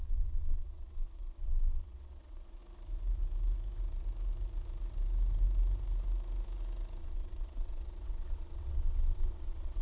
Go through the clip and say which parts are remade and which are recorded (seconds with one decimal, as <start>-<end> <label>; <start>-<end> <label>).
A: 0.0-2.6 remade; 2.6-7.0 recorded; 7.0-9.8 remade

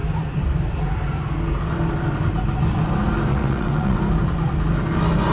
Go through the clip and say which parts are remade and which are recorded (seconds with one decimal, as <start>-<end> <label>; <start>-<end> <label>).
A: 0.0-3.3 recorded; 3.3-4.0 remade; 4.0-5.3 recorded

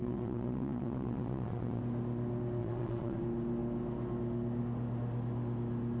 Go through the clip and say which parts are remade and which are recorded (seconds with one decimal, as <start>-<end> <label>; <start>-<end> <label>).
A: 0.0-1.8 remade; 1.8-2.6 recorded; 2.6-3.2 remade; 3.2-6.0 recorded

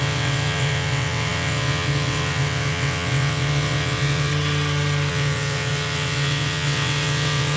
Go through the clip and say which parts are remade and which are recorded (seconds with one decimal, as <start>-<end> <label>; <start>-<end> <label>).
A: 0.0-4.3 remade; 4.3-5.1 recorded; 5.1-7.6 remade

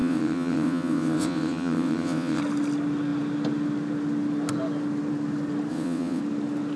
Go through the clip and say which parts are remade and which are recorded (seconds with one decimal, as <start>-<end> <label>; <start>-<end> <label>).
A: 0.0-2.4 remade; 2.4-5.7 recorded; 5.7-6.2 remade; 6.2-6.8 recorded

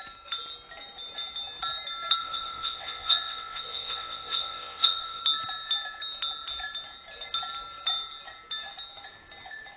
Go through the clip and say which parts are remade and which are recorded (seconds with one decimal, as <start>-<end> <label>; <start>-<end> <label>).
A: 0.0-2.2 recorded; 2.2-5.2 remade; 5.2-9.8 recorded